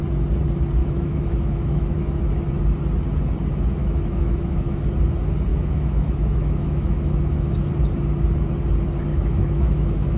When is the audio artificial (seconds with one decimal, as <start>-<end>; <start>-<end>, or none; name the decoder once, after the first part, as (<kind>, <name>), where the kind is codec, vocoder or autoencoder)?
0.8-2.2 (autoencoder, DAC-VAE); 3.8-4.8; 5.5-7.7; 9.1-10.2